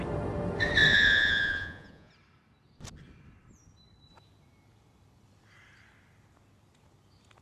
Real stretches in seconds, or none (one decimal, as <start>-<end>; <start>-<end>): 0.0-0.9; 2.1-7.4